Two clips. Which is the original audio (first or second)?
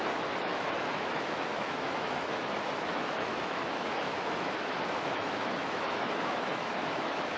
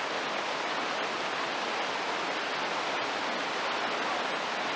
second